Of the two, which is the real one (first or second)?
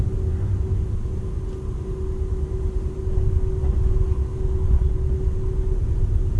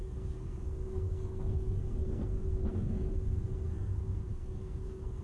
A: first